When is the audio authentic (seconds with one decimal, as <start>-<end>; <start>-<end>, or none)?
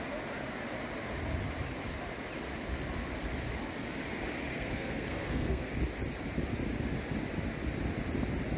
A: 0.0-4.5; 5.7-8.6